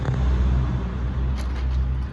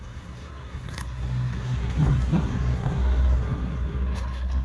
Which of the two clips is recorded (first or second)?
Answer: first